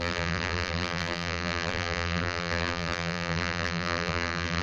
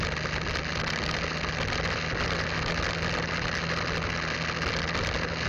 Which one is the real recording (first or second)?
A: second